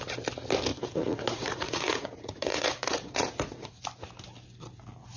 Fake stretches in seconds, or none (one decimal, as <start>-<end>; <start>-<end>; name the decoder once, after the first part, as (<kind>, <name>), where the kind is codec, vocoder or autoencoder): 0.7-3.8 (vocoder, Vocos)